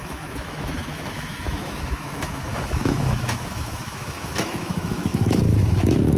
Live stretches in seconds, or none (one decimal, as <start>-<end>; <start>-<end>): none